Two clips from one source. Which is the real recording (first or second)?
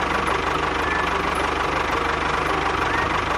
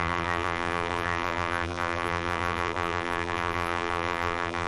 first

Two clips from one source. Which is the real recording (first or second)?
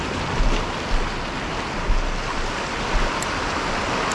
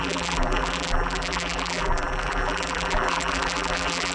first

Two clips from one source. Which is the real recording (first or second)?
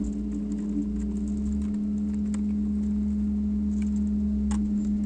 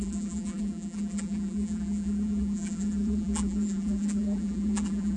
first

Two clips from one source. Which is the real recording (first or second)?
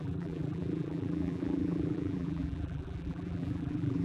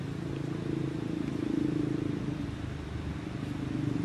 second